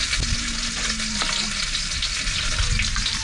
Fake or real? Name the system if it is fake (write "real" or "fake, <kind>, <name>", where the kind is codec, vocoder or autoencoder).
real